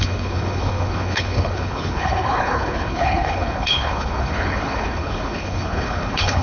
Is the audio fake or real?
fake